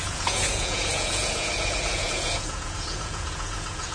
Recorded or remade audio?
remade